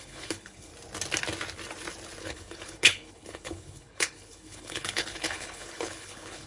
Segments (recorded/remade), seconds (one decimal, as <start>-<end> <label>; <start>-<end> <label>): 0.0-0.7 remade; 0.7-2.2 recorded; 2.2-6.5 remade